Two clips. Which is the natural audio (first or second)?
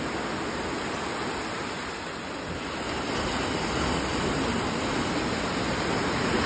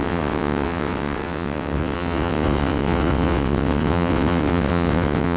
first